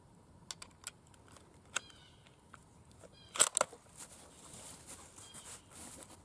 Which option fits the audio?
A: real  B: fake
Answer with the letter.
A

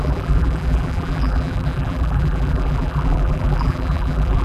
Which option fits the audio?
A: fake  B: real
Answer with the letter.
A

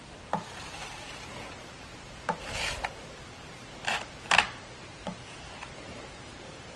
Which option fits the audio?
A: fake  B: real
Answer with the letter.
A